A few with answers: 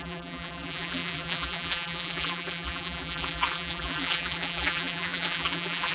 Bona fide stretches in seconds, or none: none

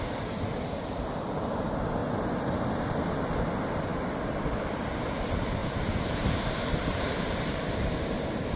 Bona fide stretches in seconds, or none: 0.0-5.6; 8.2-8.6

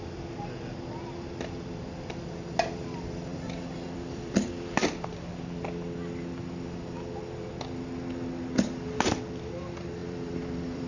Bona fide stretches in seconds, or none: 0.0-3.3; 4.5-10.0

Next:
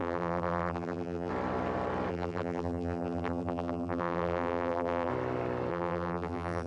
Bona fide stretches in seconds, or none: 1.3-2.1; 5.1-5.7

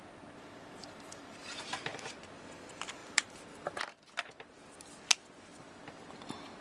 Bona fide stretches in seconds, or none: 0.0-0.8; 1.5-3.0; 3.8-5.5

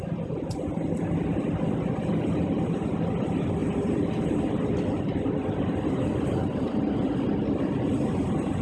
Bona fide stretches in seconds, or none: 0.0-3.6; 4.1-8.6

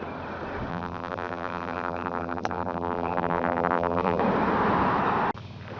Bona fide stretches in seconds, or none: 0.0-0.7; 4.2-5.8

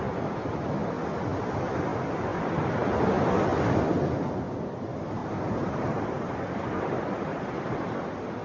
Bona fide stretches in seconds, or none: 0.0-5.2; 7.9-8.4